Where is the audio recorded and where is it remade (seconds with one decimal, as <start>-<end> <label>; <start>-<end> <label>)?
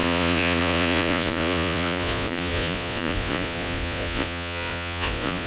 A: 0.0-5.5 remade